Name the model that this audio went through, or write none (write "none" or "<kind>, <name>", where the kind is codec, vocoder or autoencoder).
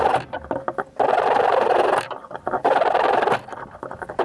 vocoder, BigVGAN v2